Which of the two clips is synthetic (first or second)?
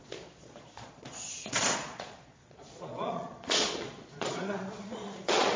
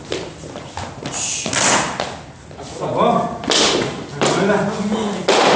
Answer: first